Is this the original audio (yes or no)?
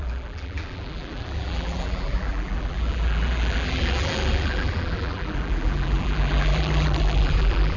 no